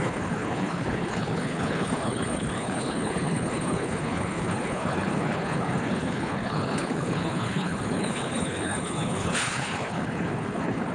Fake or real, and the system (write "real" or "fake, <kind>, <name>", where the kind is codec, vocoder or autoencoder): fake, codec, HILCodec